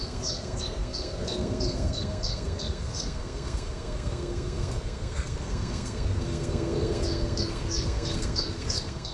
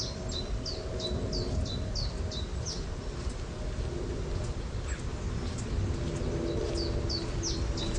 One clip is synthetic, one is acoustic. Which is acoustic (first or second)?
second